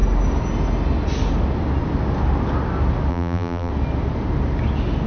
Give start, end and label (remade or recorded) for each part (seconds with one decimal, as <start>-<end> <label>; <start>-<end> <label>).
0.0-3.1 recorded; 3.1-3.7 remade; 3.7-5.1 recorded